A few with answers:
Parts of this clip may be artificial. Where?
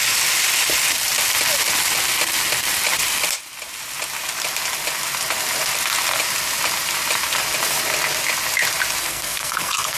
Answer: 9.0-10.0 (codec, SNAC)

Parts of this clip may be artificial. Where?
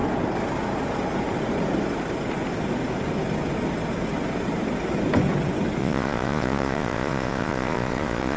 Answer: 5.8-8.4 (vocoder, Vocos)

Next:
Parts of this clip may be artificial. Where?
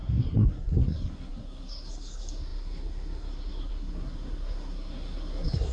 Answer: 0.0-5.7 (codec, SNAC)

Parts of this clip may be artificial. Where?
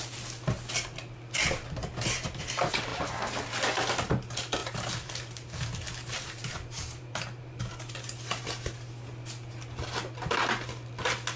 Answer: 2.9-3.5 (vocoder, BigVGAN v2); 4.6-7.7